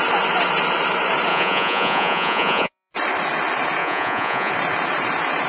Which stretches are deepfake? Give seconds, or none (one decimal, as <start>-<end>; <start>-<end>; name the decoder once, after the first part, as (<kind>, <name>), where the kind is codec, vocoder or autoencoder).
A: 1.3-2.9 (vocoder, Vocos); 3.8-4.5